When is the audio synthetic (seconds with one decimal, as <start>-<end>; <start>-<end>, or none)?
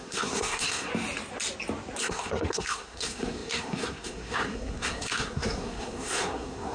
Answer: 0.0-0.9; 2.0-6.7